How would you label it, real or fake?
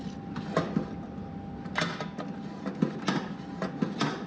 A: real